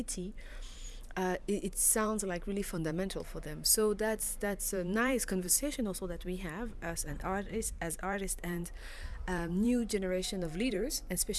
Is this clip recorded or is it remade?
remade